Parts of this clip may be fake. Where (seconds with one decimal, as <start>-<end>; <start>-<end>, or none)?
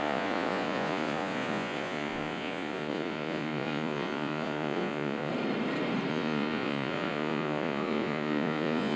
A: 0.0-5.3; 6.1-9.0